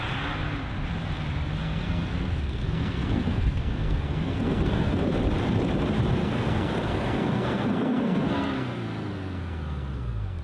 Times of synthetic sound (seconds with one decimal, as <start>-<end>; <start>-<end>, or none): 1.6-5.0; 6.2-10.4